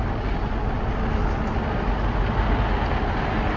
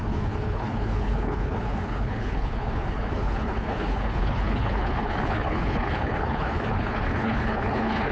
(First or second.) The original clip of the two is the first